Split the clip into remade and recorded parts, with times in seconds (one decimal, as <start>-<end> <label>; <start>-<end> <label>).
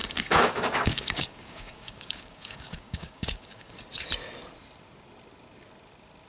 0.0-3.8 remade; 3.8-6.3 recorded